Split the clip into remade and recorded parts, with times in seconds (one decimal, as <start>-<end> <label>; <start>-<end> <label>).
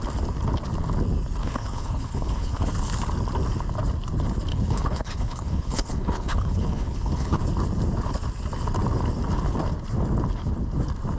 0.0-1.4 recorded; 1.4-2.7 remade; 2.7-4.5 recorded; 4.5-7.4 remade; 7.4-11.2 recorded